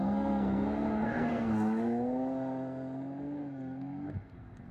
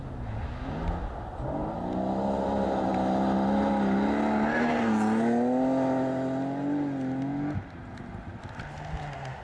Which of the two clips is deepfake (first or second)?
first